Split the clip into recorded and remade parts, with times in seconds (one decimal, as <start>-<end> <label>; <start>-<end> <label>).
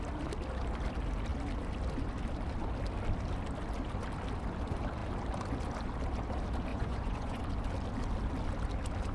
0.0-6.7 recorded; 6.7-7.4 remade; 7.4-9.1 recorded